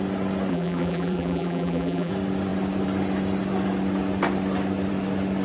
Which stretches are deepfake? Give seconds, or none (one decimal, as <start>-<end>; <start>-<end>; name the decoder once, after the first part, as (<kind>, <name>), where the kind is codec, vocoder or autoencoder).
0.5-2.1 (vocoder, BigVGAN v2)